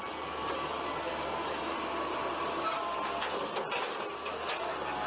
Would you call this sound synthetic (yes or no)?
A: no